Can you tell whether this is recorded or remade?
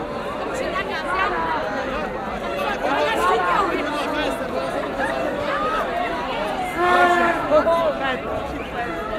recorded